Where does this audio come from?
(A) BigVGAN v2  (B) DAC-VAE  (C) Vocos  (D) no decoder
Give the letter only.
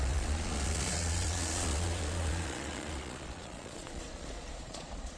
C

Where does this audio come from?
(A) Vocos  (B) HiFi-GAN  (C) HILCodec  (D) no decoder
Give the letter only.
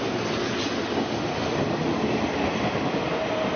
D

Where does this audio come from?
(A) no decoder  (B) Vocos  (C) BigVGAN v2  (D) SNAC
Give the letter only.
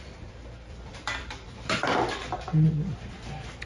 C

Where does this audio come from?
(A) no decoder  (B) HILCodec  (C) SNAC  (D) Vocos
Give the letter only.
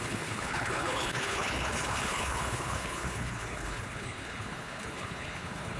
B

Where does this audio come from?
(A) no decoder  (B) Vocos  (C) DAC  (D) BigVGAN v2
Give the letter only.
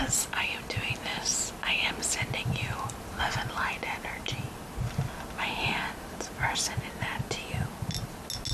A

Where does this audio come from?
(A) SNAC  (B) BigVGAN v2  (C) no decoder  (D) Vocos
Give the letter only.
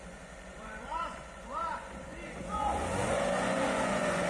D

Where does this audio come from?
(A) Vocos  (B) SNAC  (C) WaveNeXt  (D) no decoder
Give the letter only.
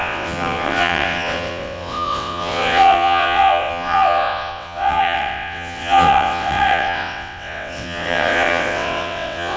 C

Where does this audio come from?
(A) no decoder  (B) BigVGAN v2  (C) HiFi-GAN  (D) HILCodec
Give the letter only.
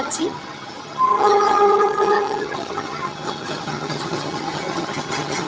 C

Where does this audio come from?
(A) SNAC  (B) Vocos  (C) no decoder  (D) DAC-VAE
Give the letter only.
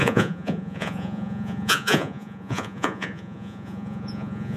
B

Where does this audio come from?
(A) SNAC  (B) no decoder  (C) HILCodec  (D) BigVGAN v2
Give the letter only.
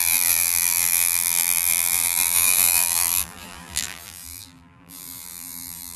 D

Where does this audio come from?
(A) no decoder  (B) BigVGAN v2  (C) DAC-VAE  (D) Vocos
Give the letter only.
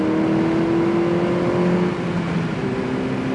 A